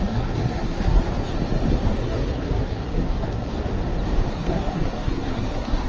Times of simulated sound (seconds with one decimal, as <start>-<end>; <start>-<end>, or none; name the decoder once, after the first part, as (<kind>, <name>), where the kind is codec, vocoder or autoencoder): 0.0-1.1 (codec, SNAC); 1.7-3.7; 4.3-5.9